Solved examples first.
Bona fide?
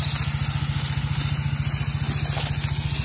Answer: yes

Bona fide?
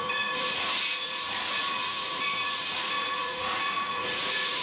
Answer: no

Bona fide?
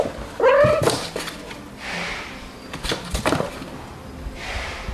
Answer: yes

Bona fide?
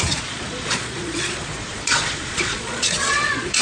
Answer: no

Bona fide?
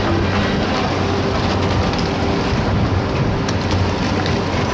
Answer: yes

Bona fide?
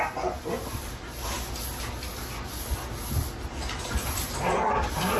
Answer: yes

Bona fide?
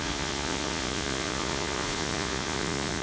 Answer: no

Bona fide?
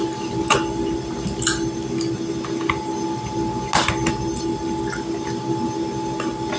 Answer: yes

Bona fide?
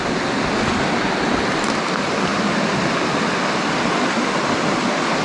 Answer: yes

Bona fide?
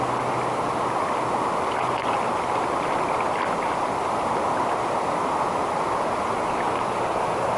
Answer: yes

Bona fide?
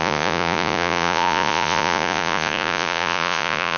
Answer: no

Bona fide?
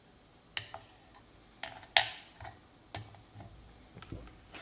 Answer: yes